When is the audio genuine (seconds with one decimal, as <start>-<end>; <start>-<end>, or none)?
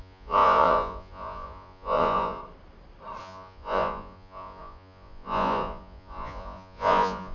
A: 2.4-3.2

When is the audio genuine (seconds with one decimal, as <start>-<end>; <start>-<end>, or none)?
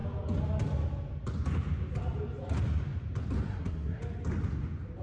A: 0.0-3.5; 4.0-5.0